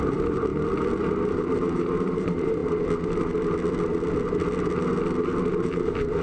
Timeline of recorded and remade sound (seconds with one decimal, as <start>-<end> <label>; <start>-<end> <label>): 0.0-0.5 remade; 0.5-1.3 recorded; 1.3-2.6 remade; 2.6-5.4 recorded; 5.4-6.2 remade